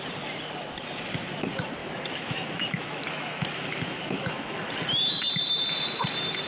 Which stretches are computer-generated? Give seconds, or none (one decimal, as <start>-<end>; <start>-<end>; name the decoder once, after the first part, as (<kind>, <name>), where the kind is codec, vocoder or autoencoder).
1.8-4.7 (autoencoder, DAC-VAE)